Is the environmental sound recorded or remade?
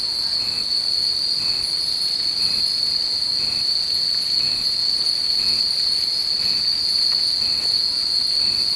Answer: recorded